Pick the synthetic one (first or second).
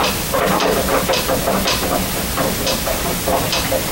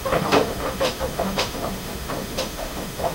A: second